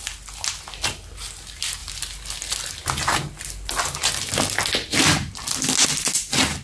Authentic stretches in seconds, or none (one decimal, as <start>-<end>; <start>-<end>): 0.0-6.6

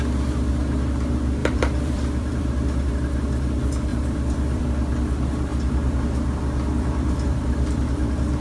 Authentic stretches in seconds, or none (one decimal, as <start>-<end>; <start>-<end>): 0.0-1.4; 2.9-3.9; 4.6-5.5

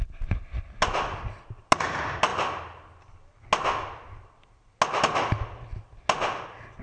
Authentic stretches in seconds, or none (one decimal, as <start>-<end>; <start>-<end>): 0.0-6.8

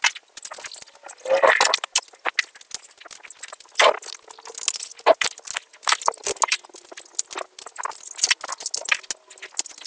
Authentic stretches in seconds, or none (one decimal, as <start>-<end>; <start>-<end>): 0.0-9.9

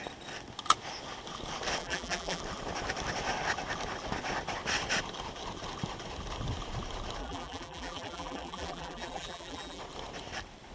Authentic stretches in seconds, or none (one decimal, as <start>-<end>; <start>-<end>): 0.0-1.8; 2.4-7.2; 9.8-10.7